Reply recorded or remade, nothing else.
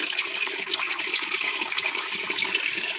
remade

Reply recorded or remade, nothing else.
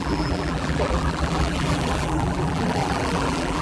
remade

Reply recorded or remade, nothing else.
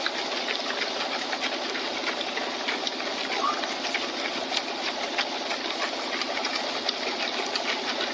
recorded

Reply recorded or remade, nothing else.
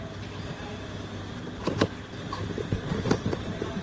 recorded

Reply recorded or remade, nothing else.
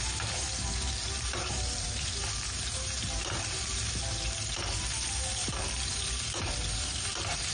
remade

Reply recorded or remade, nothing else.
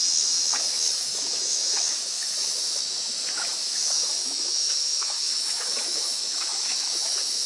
remade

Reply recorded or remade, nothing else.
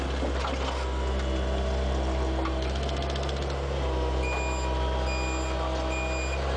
recorded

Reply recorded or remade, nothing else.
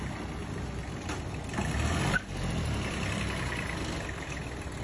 recorded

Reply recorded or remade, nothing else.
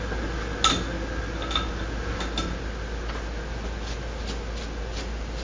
recorded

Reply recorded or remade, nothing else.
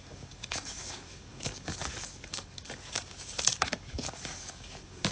remade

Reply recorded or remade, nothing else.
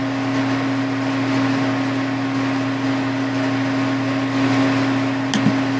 recorded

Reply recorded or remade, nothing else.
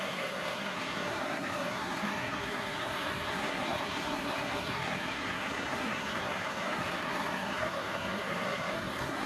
remade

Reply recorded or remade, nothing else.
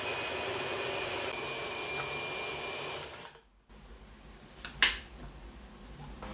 recorded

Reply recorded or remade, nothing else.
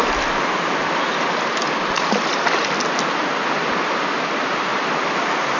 recorded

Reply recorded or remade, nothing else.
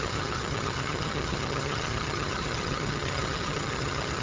remade